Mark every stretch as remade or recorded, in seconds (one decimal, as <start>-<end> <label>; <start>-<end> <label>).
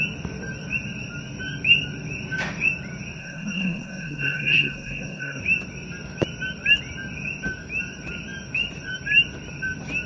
0.0-3.2 recorded; 3.2-5.4 remade; 5.4-10.1 recorded